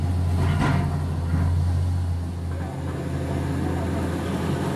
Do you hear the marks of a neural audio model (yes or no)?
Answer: no